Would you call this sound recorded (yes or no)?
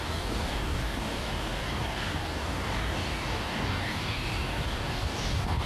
no